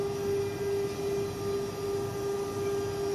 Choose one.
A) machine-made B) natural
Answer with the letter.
B